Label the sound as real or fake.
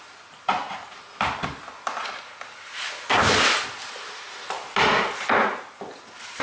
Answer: real